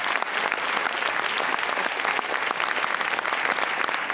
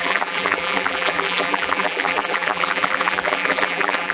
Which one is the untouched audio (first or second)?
first